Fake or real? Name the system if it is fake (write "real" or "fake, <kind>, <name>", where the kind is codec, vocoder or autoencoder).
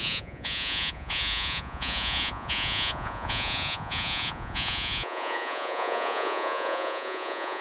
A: fake, vocoder, Vocos